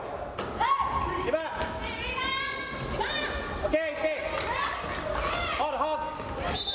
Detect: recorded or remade recorded